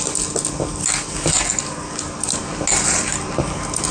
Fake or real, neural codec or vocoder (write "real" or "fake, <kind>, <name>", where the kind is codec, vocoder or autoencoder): real